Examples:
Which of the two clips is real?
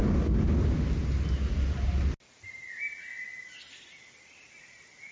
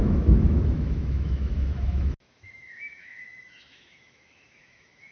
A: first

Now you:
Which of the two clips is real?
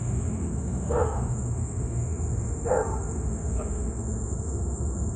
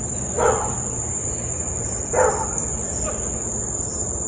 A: second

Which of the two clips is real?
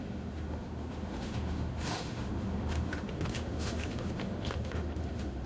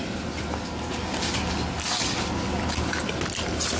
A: second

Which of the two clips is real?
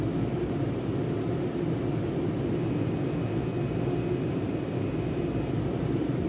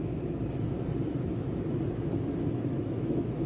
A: first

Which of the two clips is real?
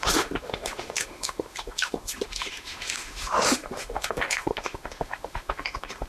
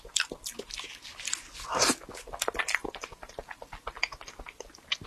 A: second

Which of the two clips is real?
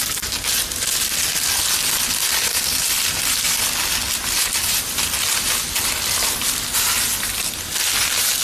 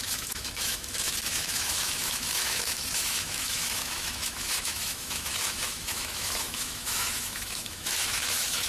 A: first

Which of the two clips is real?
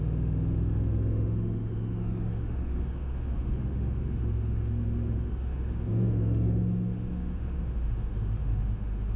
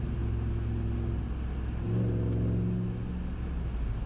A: second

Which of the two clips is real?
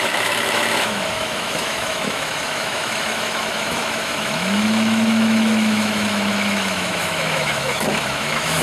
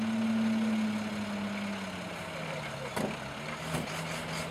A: second